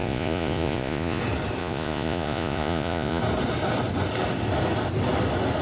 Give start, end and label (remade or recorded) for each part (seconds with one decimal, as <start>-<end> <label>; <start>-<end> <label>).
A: 0.0-1.2 remade; 1.2-1.6 recorded; 1.6-3.2 remade; 3.2-5.6 recorded